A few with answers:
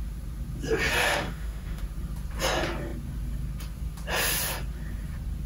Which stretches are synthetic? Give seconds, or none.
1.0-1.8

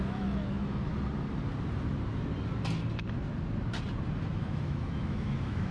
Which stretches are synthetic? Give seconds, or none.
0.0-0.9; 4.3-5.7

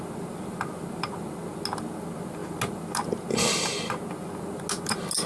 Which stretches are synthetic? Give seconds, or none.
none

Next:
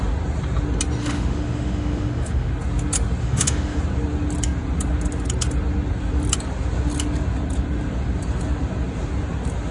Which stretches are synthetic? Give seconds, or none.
1.0-2.5; 3.2-3.8

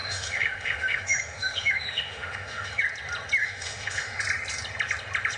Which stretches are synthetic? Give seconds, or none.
0.0-2.8; 3.4-4.2